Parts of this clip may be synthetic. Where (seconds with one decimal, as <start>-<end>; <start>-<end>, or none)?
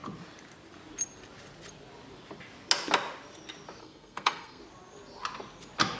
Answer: 3.8-4.6